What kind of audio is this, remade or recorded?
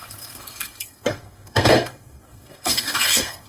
remade